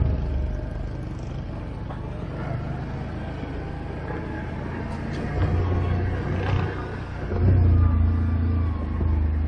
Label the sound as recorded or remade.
recorded